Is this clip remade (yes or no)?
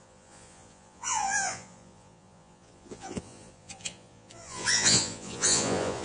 yes